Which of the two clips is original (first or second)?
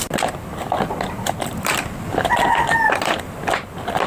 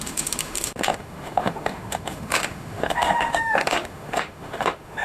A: first